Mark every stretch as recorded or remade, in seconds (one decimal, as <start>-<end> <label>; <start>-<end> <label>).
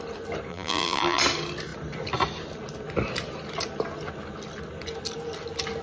0.0-0.5 recorded; 0.5-1.2 remade; 1.2-5.8 recorded